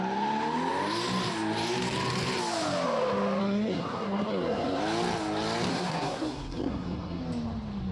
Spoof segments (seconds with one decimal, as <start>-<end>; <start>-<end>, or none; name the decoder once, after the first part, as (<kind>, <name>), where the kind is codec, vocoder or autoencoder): 3.4-4.8 (codec, SNAC); 5.7-7.2